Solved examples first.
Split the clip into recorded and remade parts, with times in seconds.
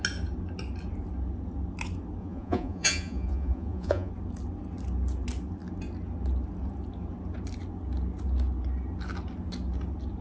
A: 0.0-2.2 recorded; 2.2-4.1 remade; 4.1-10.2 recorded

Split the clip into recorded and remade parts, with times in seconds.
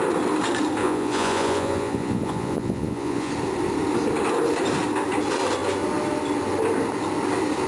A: 0.0-0.8 recorded; 0.8-3.3 remade; 3.3-7.7 recorded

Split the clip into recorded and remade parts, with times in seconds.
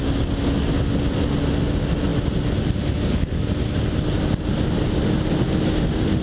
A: 0.0-6.2 recorded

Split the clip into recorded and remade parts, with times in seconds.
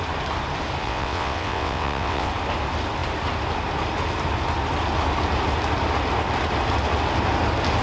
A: 0.0-0.8 recorded; 0.8-2.3 remade; 2.3-7.8 recorded